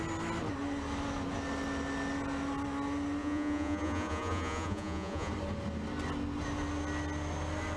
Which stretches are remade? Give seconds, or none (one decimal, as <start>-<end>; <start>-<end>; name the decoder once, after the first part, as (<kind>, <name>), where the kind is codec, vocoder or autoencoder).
3.2-5.3 (vocoder, Vocos)